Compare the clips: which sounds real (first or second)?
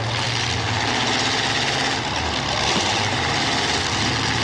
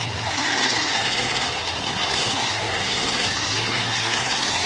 first